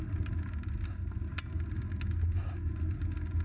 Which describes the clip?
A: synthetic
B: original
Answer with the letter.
B